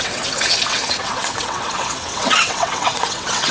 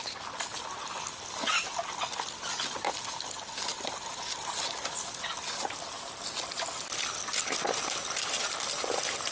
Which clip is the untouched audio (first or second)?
second